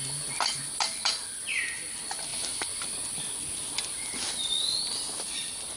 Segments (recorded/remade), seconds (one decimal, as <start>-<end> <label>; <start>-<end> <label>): 0.0-5.8 recorded